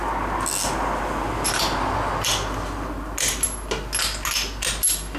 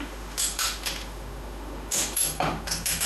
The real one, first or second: first